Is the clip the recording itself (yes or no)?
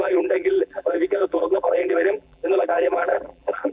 no